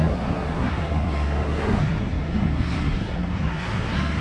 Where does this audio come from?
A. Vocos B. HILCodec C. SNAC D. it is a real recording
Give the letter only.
C